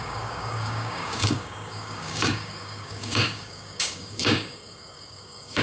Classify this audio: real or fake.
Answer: fake